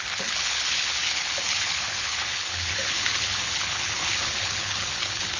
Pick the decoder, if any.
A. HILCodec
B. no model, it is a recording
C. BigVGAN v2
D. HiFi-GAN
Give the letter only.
A